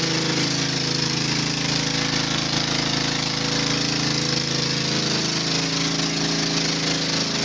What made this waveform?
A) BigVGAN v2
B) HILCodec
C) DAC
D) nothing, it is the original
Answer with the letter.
D